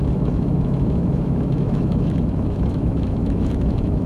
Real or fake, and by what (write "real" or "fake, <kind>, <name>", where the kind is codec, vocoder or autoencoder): fake, autoencoder, DAC-VAE